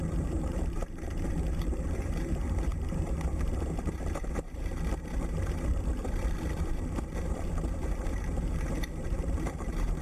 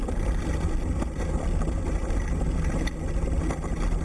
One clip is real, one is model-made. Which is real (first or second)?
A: second